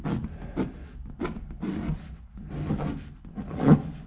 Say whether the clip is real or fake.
real